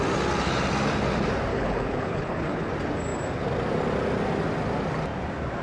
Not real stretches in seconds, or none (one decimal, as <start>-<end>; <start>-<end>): 1.5-2.7